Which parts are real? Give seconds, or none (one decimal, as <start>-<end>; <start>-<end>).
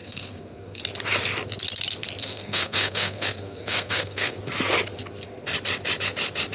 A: 0.8-2.2; 4.4-6.5